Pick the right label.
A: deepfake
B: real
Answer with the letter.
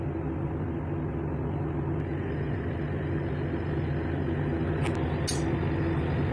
B